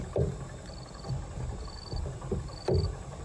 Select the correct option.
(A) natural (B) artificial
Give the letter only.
A